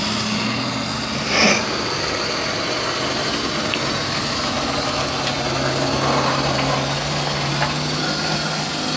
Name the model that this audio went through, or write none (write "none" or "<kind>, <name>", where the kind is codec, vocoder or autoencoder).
none